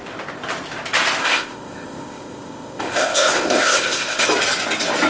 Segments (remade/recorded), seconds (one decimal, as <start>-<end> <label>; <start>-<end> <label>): 0.0-1.2 recorded; 1.2-4.3 remade; 4.3-5.1 recorded